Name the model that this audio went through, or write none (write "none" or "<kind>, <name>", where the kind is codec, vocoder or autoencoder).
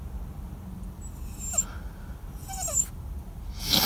none